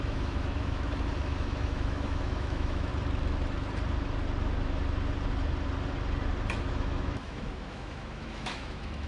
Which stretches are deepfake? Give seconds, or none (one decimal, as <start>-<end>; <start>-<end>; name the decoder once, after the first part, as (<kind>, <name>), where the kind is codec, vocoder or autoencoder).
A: 0.0-2.9 (autoencoder, DAC-VAE); 6.7-9.1